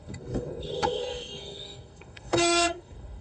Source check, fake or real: fake